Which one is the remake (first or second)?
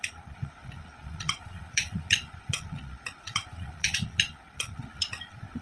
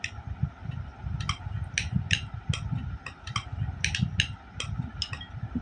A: first